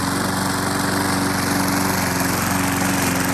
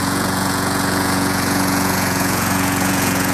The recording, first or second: first